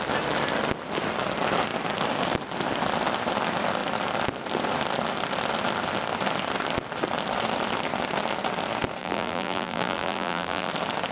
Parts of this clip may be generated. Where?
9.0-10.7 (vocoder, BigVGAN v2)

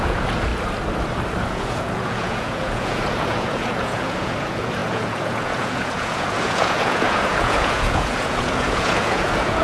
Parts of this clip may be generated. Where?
0.0-0.5 (vocoder, Vocos); 1.5-9.6

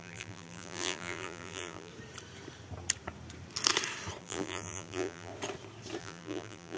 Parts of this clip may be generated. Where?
0.0-1.9 (vocoder, BigVGAN v2); 4.2-5.3; 6.0-6.8

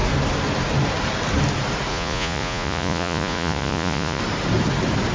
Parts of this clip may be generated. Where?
1.9-4.2 (vocoder, Vocos)

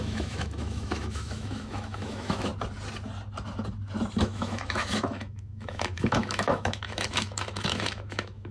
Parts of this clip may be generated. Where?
0.0-2.5 (autoencoder, DAC-VAE); 4.2-8.5

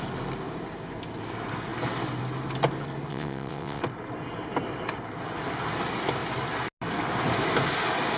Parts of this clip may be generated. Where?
3.1-3.8 (vocoder, WaveNeXt)